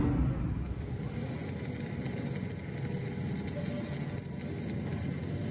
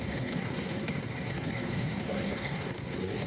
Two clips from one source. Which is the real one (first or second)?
first